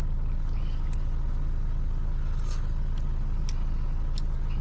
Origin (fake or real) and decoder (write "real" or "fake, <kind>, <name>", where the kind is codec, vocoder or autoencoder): real